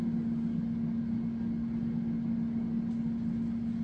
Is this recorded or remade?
recorded